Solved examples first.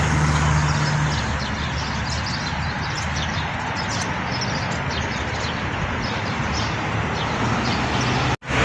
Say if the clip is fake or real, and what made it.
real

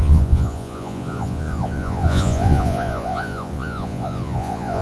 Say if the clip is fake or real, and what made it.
fake, vocoder, Vocos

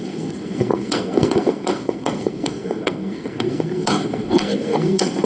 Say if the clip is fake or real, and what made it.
fake, codec, SNAC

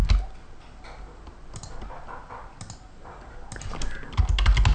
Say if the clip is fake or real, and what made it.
real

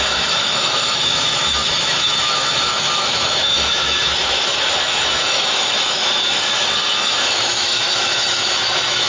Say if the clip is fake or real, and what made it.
fake, autoencoder, DAC-VAE